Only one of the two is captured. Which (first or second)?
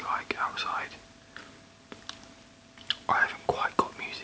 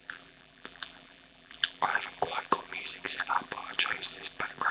first